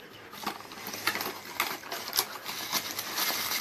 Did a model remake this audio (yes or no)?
no